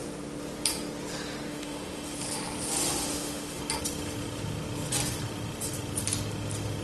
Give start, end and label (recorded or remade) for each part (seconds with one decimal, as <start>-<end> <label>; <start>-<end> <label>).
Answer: 0.0-1.5 recorded; 1.5-2.2 remade; 2.2-3.1 recorded; 3.1-3.6 remade; 3.6-6.8 recorded